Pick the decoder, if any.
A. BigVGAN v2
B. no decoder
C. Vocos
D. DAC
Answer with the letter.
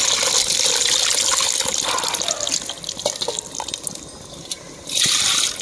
B